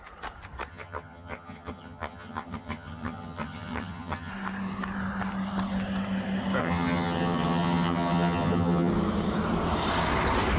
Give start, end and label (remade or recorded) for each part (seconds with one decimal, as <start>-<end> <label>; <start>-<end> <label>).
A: 0.0-0.7 recorded; 0.7-4.3 remade; 4.3-6.6 recorded; 6.6-8.9 remade; 8.9-10.6 recorded